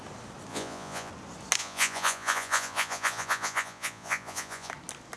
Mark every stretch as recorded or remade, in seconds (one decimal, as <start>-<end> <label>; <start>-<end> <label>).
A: 0.0-0.5 recorded; 0.5-1.1 remade; 1.1-1.6 recorded; 1.6-4.7 remade; 4.7-5.2 recorded